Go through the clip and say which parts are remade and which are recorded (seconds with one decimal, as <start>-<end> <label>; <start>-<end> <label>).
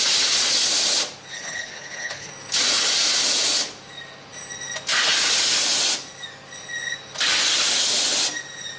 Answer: 0.0-1.3 recorded; 1.3-2.3 remade; 2.3-8.8 recorded